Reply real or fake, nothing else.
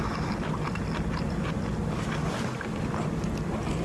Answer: real